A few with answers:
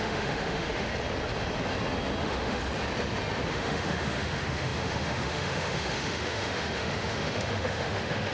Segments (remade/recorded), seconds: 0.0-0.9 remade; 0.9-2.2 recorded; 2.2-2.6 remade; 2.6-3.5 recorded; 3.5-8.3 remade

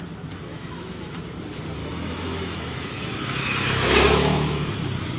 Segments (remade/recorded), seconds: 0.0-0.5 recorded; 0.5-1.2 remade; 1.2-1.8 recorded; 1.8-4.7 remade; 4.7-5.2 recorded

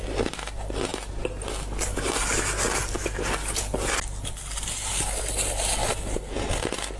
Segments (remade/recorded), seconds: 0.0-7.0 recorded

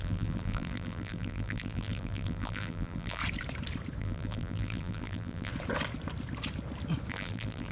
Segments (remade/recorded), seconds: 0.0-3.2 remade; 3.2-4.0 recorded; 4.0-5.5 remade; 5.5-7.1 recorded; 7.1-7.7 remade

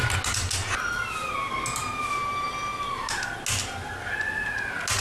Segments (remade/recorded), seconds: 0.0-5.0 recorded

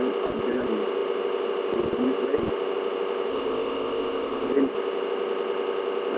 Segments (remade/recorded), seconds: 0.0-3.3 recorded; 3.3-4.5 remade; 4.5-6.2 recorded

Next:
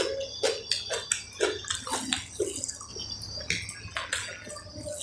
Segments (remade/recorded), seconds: 0.0-5.0 recorded

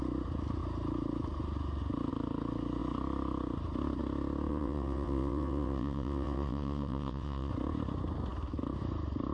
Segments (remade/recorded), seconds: 0.0-4.5 recorded; 4.5-7.5 remade; 7.5-9.3 recorded